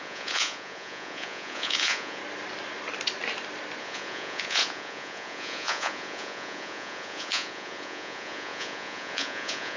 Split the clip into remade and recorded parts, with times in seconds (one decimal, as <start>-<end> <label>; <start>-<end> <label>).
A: 0.0-2.2 remade; 2.2-3.8 recorded; 3.8-9.8 remade

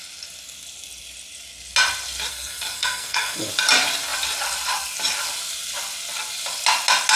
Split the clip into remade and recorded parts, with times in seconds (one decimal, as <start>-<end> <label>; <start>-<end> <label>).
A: 0.0-2.3 recorded; 2.3-3.5 remade; 3.5-7.2 recorded

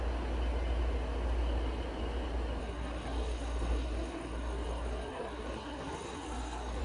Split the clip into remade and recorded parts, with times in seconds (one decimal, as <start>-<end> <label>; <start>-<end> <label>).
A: 0.0-2.6 recorded; 2.6-6.8 remade

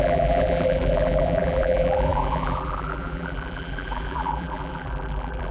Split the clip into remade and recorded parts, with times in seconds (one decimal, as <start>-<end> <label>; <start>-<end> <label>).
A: 0.0-5.5 remade

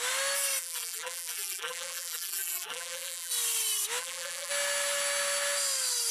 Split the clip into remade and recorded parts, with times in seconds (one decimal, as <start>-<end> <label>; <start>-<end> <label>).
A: 0.0-0.6 recorded; 0.6-3.3 remade; 3.3-4.0 recorded; 4.0-4.5 remade; 4.5-6.1 recorded

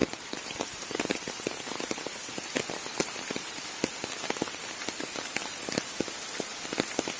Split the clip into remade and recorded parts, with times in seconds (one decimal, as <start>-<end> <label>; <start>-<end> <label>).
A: 0.0-2.3 remade; 2.3-2.9 recorded; 2.9-3.6 remade; 3.6-7.2 recorded